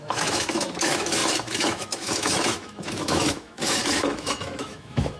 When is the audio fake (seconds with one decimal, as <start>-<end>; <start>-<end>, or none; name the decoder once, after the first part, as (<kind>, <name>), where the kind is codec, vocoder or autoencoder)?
0.0-5.2 (autoencoder, DAC-VAE)